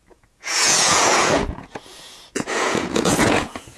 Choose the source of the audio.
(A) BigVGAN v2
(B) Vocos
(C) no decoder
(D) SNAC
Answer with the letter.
B